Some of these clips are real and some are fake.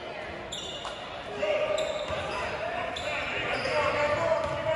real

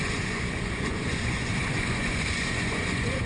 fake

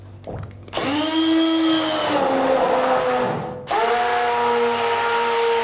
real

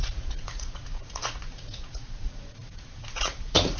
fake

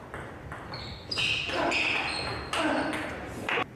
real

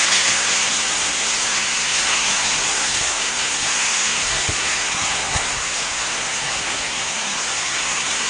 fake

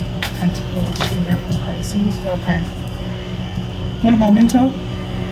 fake